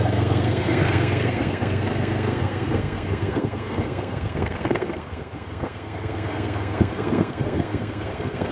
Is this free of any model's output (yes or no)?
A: no